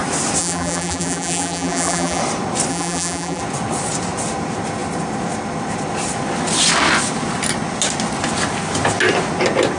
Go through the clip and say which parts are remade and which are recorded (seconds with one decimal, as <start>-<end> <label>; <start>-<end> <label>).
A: 0.0-0.4 recorded; 0.4-2.2 remade; 2.2-2.7 recorded; 2.7-3.4 remade; 3.4-9.8 recorded